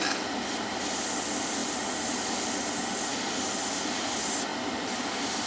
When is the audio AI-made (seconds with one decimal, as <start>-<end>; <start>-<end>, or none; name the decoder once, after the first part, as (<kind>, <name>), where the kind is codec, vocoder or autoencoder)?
none